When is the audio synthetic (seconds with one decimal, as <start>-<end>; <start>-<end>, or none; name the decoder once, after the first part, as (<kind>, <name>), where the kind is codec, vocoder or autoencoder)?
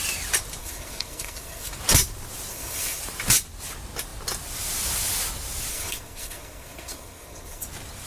0.6-1.7 (codec, SNAC); 2.5-3.0; 5.7-7.6